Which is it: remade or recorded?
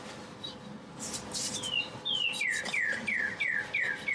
recorded